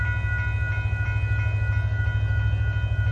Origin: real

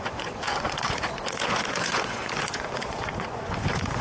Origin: fake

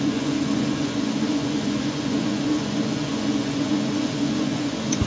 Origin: fake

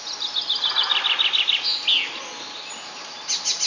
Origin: real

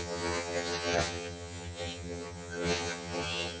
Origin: fake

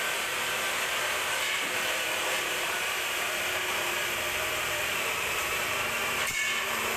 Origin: fake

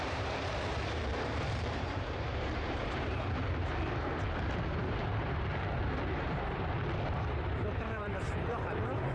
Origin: fake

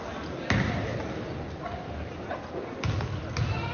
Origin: real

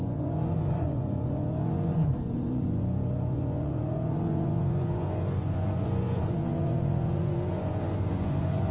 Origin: fake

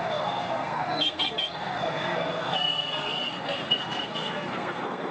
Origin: fake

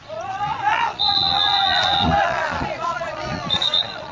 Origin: fake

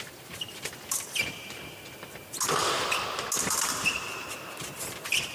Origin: real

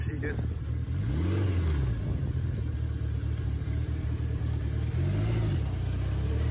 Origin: real